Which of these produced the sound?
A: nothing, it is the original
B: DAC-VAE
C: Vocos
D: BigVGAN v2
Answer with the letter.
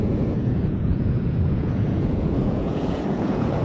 C